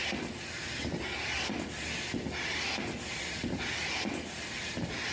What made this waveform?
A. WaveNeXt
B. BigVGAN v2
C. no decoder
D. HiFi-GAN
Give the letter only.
C